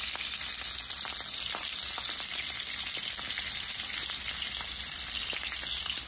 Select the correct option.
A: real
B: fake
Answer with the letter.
A